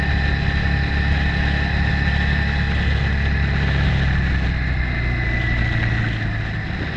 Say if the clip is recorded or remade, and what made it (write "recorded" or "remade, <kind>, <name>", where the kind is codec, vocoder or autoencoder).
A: recorded